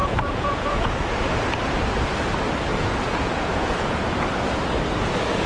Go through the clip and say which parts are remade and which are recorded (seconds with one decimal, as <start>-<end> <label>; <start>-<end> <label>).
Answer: 0.0-0.9 remade; 0.9-2.7 recorded; 2.7-4.0 remade; 4.0-5.5 recorded